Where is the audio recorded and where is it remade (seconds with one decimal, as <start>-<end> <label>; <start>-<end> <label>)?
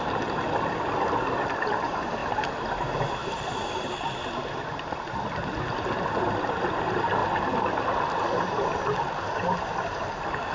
0.0-10.5 recorded